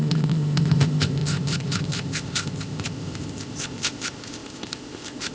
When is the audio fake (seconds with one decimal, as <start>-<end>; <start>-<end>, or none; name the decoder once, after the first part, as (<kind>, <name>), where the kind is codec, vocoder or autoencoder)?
0.0-5.3 (codec, ZipCodec)